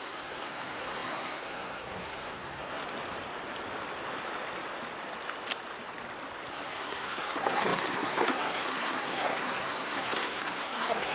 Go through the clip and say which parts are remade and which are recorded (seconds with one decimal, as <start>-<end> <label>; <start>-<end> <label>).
0.0-2.8 remade; 2.8-6.5 recorded; 6.5-11.1 remade